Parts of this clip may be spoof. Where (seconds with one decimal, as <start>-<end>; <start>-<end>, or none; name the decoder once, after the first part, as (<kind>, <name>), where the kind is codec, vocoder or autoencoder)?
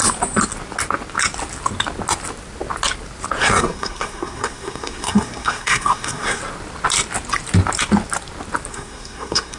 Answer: 3.4-6.4 (codec, SNAC); 8.7-9.6